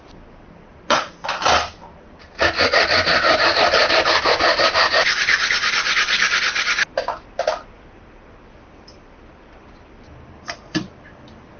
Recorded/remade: recorded